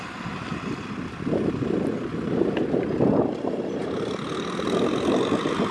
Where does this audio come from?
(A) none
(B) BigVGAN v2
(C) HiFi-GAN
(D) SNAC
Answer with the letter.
A